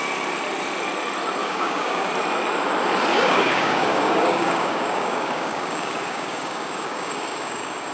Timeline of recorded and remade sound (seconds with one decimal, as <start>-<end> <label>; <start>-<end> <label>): 0.0-1.4 recorded; 1.4-2.1 remade; 2.1-3.1 recorded; 3.1-7.9 remade